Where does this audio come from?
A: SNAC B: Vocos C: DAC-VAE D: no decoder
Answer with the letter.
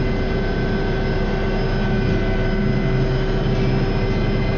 D